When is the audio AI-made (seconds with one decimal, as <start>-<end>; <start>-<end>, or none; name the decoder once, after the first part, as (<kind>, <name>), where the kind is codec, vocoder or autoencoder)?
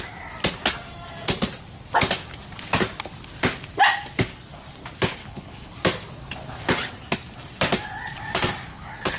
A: 5.2-5.7 (codec, HILCodec); 8.7-9.2